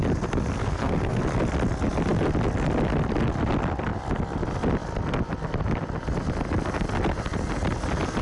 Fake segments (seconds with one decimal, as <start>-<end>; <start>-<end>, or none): 0.6-1.2